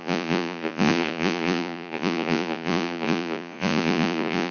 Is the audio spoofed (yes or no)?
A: yes